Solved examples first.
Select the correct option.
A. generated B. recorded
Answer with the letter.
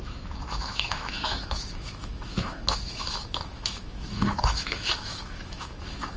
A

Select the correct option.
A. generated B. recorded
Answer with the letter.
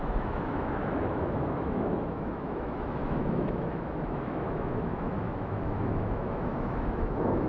A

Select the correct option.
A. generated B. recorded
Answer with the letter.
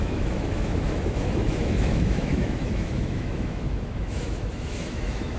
A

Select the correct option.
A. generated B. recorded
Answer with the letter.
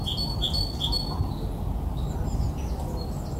B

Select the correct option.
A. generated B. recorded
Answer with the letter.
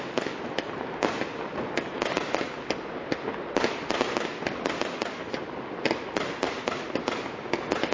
B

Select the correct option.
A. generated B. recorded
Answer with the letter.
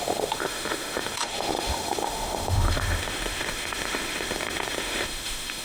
A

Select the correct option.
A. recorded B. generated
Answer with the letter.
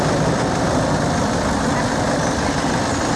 A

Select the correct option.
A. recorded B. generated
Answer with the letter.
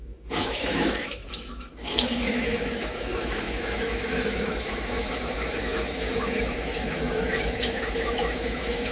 B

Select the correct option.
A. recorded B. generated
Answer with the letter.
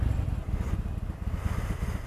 A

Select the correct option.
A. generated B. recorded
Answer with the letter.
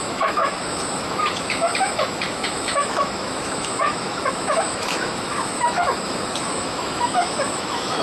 A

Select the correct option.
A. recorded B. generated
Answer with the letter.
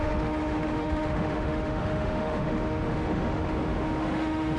B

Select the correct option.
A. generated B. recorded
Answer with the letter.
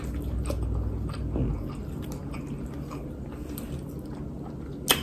B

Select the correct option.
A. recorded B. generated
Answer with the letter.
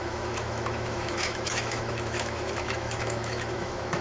B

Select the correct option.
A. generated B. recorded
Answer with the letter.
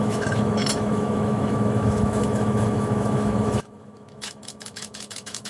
A